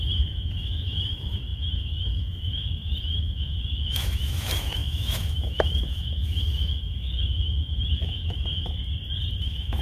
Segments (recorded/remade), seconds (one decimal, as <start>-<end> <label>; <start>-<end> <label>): 0.0-8.8 remade; 8.8-9.4 recorded; 9.4-9.8 remade